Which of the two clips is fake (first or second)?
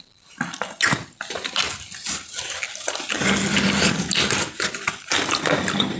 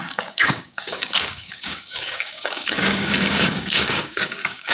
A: second